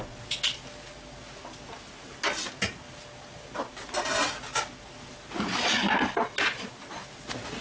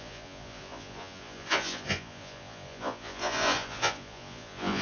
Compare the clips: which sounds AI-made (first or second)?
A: second